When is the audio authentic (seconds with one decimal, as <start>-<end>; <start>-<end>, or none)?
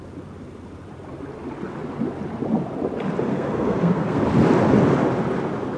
0.0-3.3; 4.2-5.8